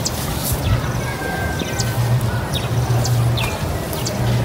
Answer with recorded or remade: recorded